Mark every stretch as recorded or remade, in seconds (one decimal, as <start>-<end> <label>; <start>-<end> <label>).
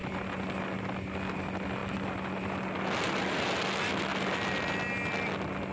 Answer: 0.0-5.7 recorded